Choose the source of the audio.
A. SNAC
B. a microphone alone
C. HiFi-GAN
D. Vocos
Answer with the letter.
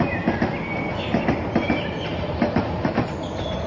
B